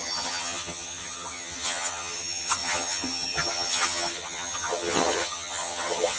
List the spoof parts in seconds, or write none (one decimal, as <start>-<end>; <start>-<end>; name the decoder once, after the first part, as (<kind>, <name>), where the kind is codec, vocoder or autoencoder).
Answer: 0.0-6.2 (vocoder, HiFi-GAN)